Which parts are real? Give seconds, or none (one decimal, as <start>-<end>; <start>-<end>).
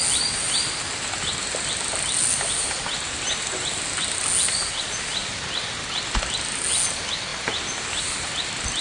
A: 0.0-8.8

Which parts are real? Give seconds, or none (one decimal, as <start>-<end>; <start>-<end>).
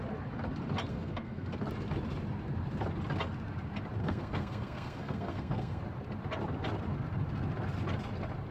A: 0.0-0.9; 1.6-4.0; 5.8-8.5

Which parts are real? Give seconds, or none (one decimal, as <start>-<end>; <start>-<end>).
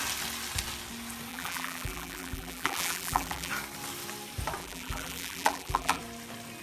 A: 0.0-1.3; 3.5-4.6; 6.0-6.6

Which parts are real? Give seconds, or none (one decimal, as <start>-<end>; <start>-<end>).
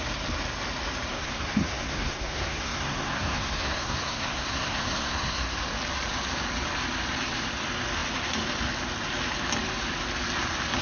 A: 0.0-1.1; 5.6-10.8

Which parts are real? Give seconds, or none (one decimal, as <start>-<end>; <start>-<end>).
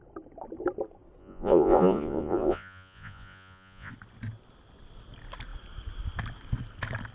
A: 0.0-1.2; 3.9-7.1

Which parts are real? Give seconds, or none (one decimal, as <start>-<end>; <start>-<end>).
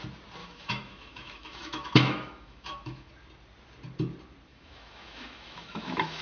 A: 0.0-0.4; 3.1-4.5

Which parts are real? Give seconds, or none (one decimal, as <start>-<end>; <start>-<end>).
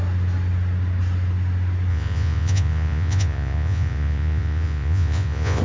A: 0.0-1.9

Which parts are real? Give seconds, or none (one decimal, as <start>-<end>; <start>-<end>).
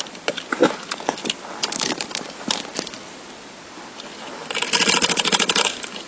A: 0.0-6.1